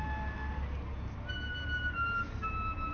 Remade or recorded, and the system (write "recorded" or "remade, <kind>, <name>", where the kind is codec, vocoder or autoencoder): recorded